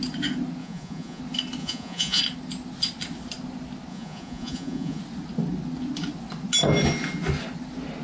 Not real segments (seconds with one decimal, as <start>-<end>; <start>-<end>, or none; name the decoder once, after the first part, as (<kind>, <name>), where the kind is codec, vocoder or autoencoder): 0.6-1.2 (vocoder, Vocos); 1.6-2.2; 3.9-5.0